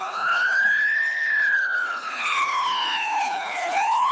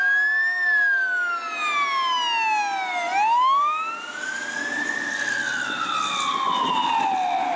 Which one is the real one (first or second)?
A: second